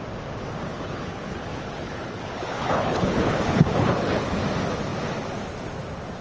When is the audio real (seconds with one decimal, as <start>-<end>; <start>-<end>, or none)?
0.0-0.7; 4.4-6.2

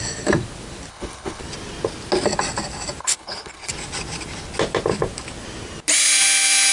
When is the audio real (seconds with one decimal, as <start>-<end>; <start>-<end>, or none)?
0.0-0.9; 1.4-3.0; 3.7-6.7

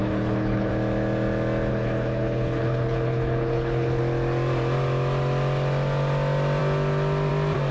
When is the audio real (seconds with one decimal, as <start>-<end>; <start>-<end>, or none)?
0.7-1.7; 4.0-7.7

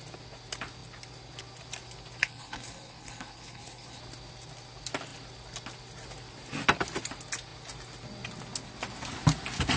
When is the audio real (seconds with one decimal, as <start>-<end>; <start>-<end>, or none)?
0.0-2.2; 4.0-9.8

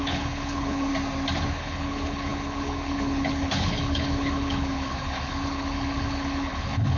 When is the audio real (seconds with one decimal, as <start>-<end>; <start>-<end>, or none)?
0.9-1.5

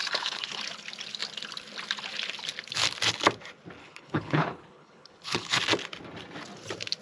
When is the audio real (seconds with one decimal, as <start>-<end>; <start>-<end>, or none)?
0.6-3.8; 5.6-7.0